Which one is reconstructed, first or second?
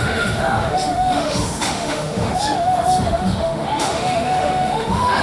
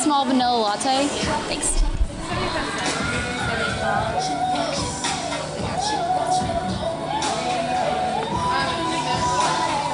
first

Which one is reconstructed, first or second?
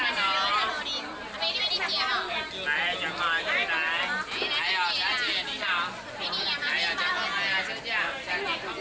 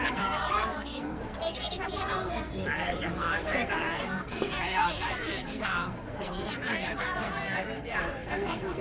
second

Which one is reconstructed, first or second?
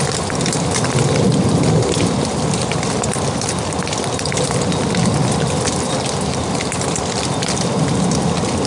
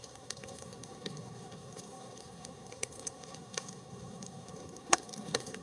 second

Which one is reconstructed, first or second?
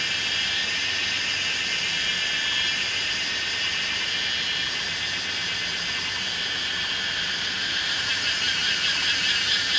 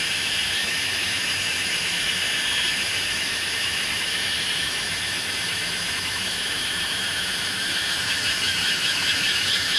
second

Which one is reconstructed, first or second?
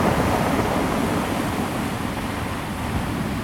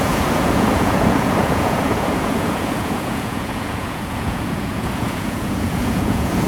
second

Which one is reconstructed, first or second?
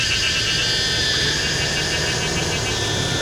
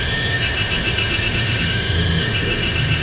second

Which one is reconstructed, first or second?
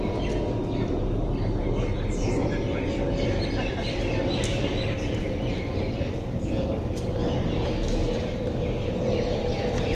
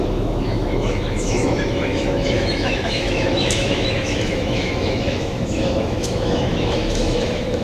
second